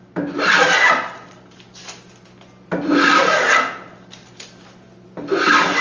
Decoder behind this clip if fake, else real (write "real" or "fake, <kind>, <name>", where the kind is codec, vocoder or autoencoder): real